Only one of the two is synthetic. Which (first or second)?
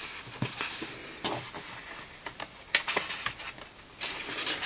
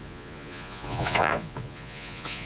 second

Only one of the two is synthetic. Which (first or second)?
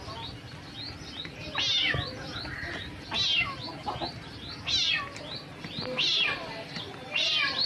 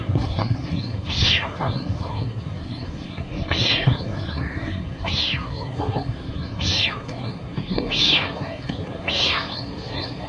second